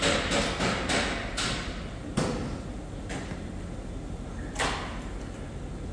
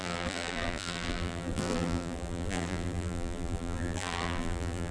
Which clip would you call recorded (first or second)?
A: first